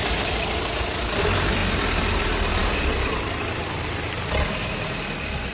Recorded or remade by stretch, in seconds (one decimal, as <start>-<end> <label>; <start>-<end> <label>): 0.0-1.6 remade; 1.6-2.1 recorded; 2.1-5.5 remade